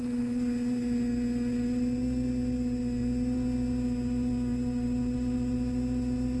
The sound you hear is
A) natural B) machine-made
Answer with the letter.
A